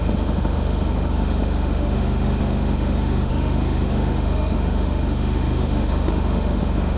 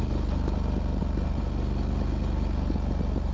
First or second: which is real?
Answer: second